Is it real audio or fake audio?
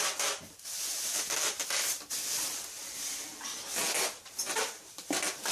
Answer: real